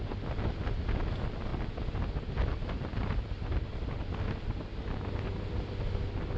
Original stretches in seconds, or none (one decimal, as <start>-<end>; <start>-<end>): 0.0-6.4